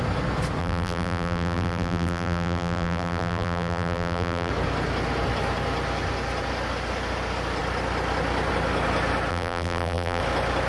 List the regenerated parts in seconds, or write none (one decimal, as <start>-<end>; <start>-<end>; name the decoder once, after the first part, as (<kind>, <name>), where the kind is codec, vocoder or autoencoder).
0.6-4.5 (vocoder, BigVGAN v2); 9.3-10.2